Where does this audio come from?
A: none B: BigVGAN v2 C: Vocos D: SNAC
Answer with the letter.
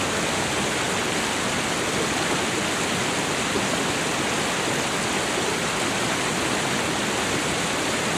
A